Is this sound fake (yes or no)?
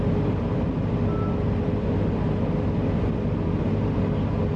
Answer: no